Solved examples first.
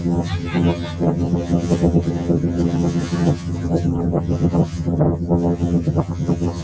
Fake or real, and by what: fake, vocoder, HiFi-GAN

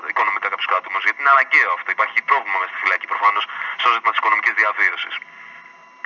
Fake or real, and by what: real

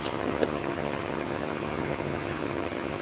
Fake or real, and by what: fake, vocoder, HiFi-GAN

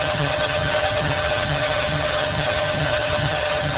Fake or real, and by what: fake, vocoder, HiFi-GAN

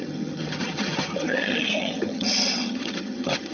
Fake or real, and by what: fake, vocoder, HiFi-GAN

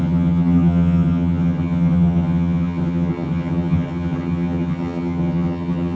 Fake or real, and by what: fake, vocoder, HiFi-GAN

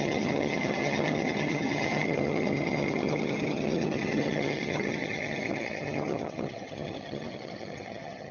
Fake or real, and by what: fake, vocoder, HiFi-GAN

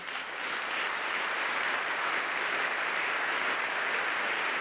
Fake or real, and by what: real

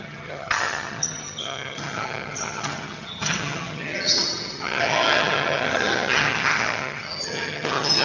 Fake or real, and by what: fake, vocoder, HiFi-GAN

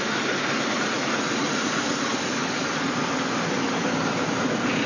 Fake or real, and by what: real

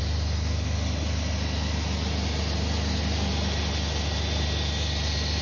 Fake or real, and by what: real